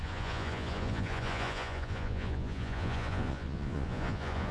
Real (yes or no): no